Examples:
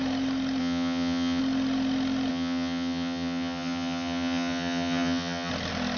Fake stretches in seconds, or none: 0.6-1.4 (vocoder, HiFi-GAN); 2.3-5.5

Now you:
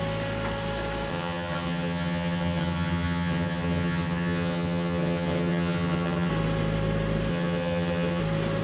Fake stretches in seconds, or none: 1.1-6.3 (vocoder, HiFi-GAN); 7.3-8.2

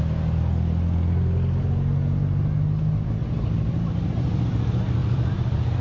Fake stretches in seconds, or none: none

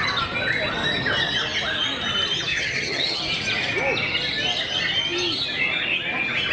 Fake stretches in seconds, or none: 2.5-3.2 (vocoder, HiFi-GAN)

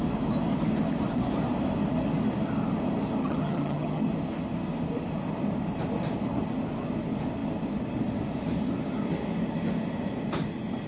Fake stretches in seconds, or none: 3.2-4.1 (vocoder, HiFi-GAN)

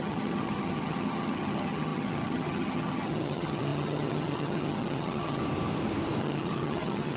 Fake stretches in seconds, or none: 0.0-5.4 (vocoder, HiFi-GAN); 6.2-7.2

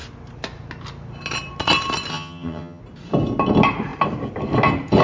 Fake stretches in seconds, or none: 2.1-2.8 (vocoder, HiFi-GAN)

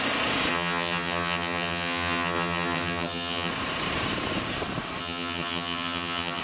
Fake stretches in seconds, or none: 0.5-3.5 (vocoder, HiFi-GAN); 5.0-6.4